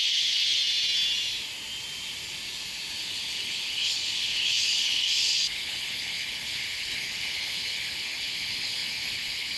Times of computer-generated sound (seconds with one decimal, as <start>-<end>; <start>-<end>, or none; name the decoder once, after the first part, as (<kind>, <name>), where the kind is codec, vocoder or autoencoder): 0.0-0.6 (codec, HILCodec); 3.0-9.6